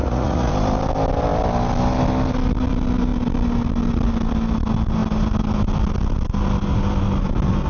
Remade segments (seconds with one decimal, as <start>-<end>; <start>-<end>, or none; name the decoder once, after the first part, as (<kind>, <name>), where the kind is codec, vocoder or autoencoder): 0.0-0.5 (vocoder, Vocos)